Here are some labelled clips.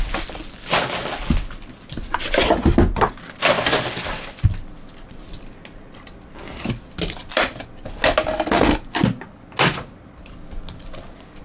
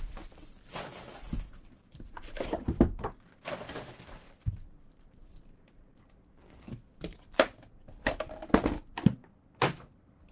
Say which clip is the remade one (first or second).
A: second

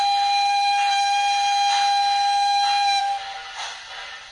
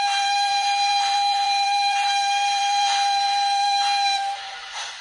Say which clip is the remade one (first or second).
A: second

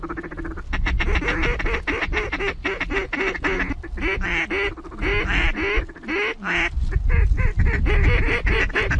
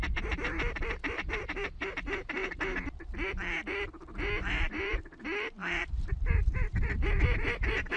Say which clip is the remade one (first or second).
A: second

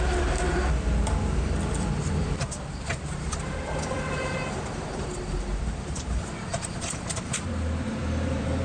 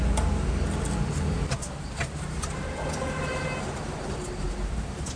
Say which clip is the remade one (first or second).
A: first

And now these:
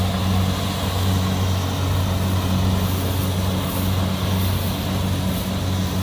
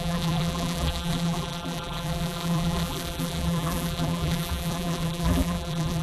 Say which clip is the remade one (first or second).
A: second